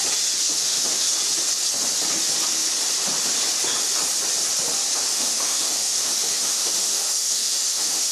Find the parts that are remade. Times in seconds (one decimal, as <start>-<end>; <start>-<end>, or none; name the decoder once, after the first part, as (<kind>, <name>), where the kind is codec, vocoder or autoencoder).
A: 0.5-1.1 (autoencoder, DAC-VAE); 5.1-8.1